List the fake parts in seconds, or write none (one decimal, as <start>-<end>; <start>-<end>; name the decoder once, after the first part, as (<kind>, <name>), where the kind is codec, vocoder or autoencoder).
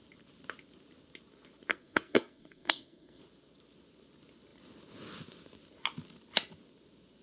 1.7-3.2 (codec, SNAC)